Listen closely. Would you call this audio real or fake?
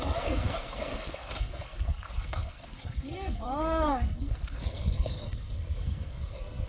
fake